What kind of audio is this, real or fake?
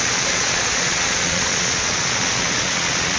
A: fake